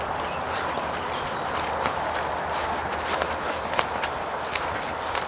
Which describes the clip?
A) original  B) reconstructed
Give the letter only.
A